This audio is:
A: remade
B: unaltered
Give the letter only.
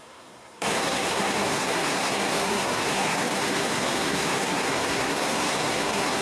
A